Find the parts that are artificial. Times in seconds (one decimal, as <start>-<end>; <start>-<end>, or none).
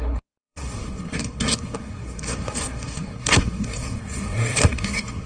0.0-5.3